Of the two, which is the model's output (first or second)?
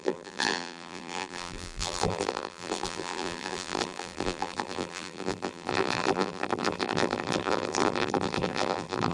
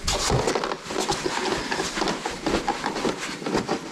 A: first